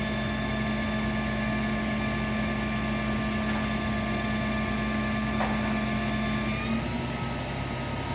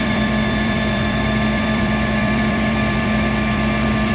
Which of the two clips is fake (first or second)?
second